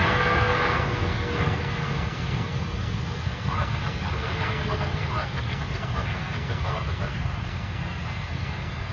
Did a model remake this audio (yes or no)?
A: yes